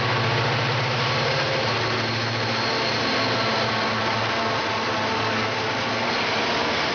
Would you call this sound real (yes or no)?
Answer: yes